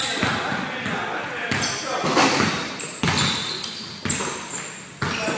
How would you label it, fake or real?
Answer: real